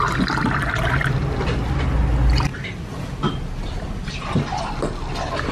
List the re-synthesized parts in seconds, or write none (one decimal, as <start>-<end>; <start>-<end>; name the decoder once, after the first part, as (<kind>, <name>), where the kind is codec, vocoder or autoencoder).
2.5-4.6 (vocoder, BigVGAN v2)